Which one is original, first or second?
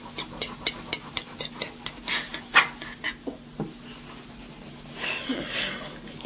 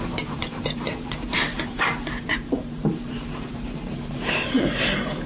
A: first